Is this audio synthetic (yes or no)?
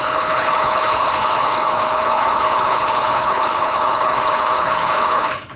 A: yes